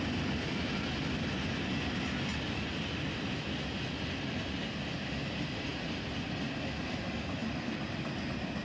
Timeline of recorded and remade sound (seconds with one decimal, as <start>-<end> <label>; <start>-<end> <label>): 0.0-8.6 recorded